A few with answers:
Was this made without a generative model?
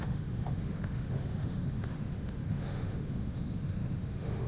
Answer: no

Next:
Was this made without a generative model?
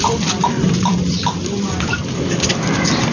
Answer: no